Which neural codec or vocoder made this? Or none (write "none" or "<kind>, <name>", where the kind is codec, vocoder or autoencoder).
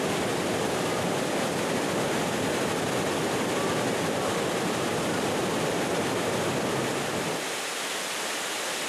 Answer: none